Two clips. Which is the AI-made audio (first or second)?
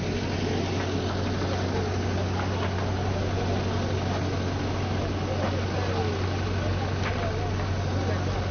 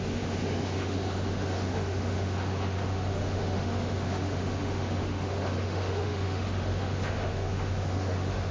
second